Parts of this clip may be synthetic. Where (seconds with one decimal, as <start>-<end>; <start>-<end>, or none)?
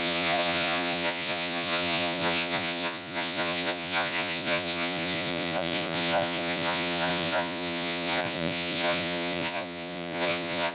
0.0-10.7